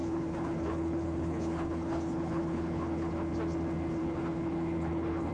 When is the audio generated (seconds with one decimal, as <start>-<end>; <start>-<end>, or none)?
0.0-3.1; 4.0-5.3